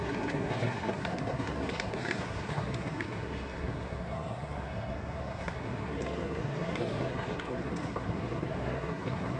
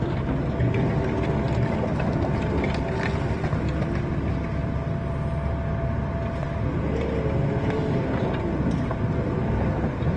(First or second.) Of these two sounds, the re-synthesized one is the first